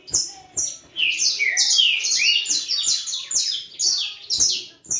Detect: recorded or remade recorded